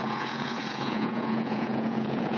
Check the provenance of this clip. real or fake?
fake